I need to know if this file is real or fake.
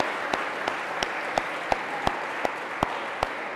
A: real